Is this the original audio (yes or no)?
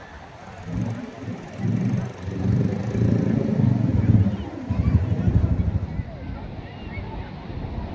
yes